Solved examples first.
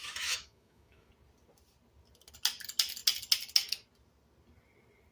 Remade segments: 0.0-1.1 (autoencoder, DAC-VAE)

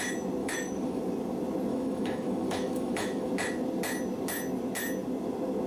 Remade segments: 0.4-1.0 (autoencoder, DAC-VAE); 1.7-3.3

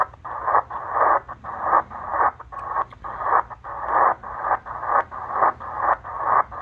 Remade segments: none

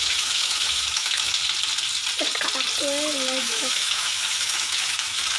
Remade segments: 0.0-1.4 (autoencoder, DAC-VAE); 3.4-5.4

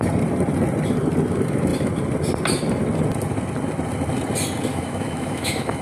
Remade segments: 4.7-5.8 (autoencoder, DAC-VAE)

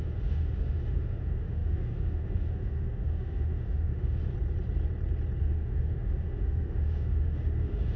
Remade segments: 0.0-4.3 (autoencoder, DAC-VAE); 5.4-8.0